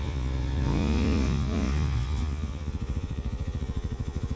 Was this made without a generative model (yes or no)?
no